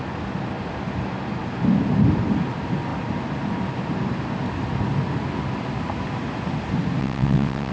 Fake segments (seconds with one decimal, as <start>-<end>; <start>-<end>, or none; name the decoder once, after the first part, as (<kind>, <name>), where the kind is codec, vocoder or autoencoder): 7.0-7.7 (vocoder, WaveNeXt)